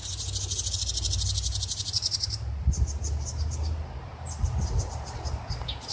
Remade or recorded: recorded